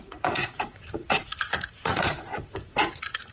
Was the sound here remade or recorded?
remade